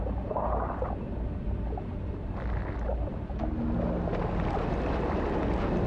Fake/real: real